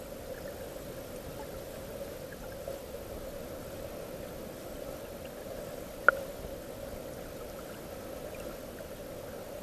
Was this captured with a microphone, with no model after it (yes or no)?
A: yes